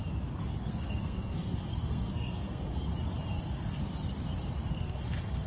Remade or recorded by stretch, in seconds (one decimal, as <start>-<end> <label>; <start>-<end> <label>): 0.0-0.7 recorded; 0.7-2.9 remade; 2.9-3.4 recorded; 3.4-3.8 remade; 3.8-4.7 recorded; 4.7-5.5 remade